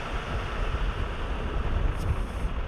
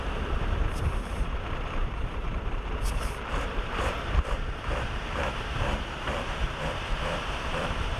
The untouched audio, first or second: first